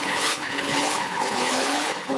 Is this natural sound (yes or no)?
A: no